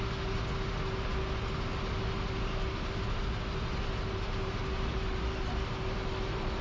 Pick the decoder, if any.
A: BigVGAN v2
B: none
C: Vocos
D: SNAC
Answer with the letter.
B